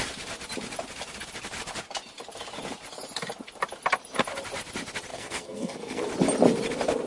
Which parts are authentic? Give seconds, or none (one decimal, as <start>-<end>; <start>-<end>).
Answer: 0.0-5.1; 6.0-7.1